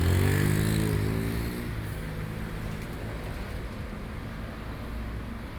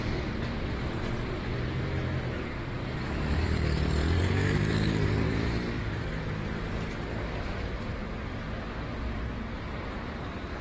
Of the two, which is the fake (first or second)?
second